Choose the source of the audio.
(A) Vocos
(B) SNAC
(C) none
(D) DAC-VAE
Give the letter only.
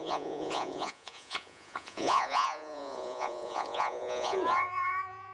A